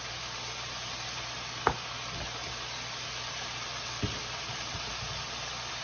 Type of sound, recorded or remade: recorded